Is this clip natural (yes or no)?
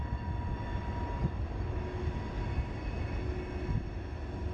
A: yes